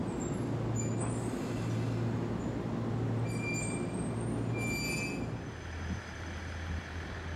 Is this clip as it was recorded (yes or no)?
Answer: yes